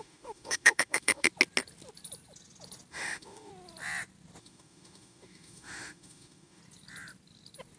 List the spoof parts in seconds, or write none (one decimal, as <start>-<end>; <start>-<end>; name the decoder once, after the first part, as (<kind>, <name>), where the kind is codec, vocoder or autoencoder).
0.0-1.3 (autoencoder, DAC-VAE); 2.9-3.5; 4.4-6.6